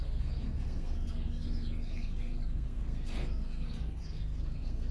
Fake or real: fake